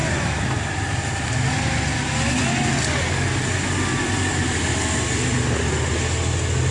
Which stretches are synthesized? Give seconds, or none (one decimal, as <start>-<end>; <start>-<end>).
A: none